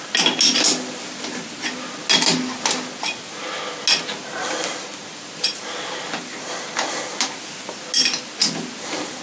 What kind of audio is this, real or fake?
real